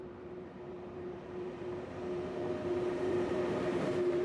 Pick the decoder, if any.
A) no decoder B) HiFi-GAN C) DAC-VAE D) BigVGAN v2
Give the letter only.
D